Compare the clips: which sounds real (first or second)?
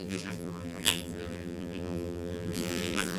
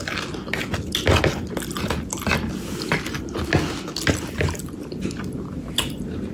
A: second